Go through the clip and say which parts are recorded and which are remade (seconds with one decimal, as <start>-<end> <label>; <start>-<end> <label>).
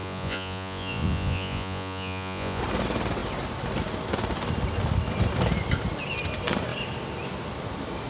0.0-2.6 remade; 2.6-8.1 recorded